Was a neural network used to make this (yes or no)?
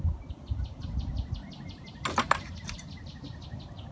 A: no